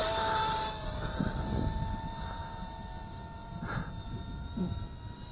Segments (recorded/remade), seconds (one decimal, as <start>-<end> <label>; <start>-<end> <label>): 0.0-5.3 recorded